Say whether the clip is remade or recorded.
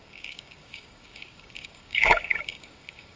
remade